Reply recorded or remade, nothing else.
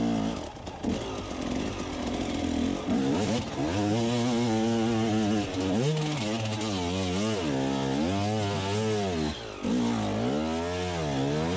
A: recorded